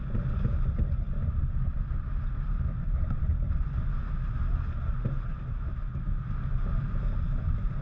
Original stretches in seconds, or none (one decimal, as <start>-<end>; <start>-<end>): 0.0-7.8